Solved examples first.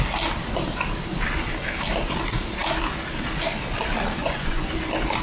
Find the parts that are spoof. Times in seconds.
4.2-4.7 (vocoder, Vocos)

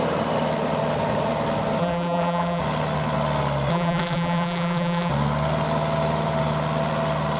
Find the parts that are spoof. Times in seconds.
1.8-2.6 (vocoder, BigVGAN v2); 3.7-5.1

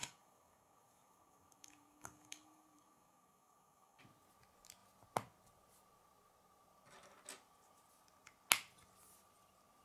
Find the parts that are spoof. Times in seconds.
0.0-4.0 (codec, DAC)

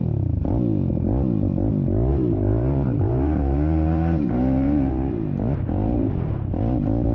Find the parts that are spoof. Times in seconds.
2.1-4.9 (vocoder, BigVGAN v2)

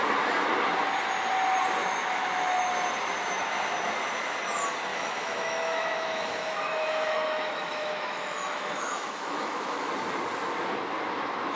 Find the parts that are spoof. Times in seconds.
1.8-2.7 (autoencoder, DAC-VAE); 4.9-9.9